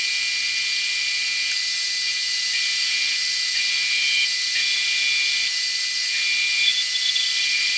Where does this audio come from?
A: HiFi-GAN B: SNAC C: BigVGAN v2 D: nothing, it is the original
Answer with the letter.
D